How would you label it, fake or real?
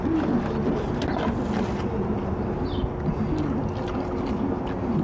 real